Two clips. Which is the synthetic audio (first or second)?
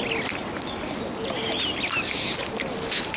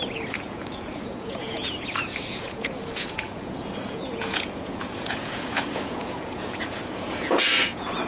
second